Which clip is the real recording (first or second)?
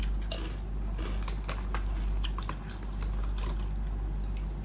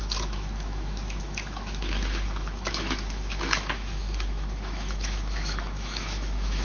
first